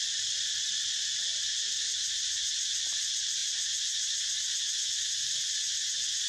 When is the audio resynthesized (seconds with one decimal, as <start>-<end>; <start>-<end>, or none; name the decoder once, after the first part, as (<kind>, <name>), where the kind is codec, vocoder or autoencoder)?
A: 0.0-1.3 (vocoder, BigVGAN v2); 2.2-3.4; 5.0-6.3